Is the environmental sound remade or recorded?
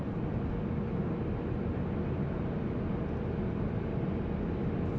recorded